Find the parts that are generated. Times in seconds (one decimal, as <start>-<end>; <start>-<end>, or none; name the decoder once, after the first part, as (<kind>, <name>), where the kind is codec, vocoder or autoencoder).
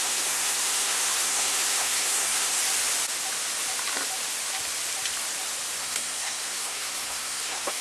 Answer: 0.0-2.6 (codec, SNAC); 5.8-7.8